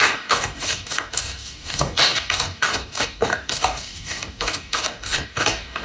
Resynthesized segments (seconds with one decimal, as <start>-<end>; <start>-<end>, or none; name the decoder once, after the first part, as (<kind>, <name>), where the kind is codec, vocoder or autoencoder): 0.0-5.8 (codec, DAC)